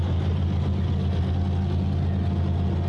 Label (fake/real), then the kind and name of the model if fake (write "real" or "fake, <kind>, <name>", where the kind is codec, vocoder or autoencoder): real